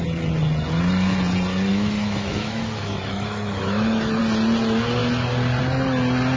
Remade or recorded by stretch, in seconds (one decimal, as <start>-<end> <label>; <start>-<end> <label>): 0.0-1.7 recorded; 1.7-4.2 remade; 4.2-6.4 recorded